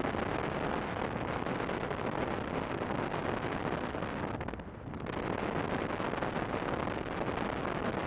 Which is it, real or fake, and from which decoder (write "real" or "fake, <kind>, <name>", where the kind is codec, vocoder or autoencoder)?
real